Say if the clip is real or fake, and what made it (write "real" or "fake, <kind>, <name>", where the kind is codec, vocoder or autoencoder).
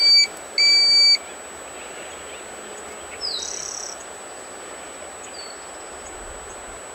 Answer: real